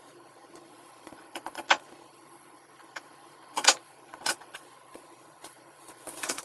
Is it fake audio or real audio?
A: fake